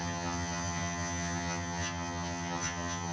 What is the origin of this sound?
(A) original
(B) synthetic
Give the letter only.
B